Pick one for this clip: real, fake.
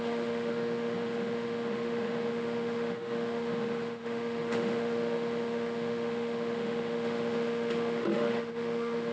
fake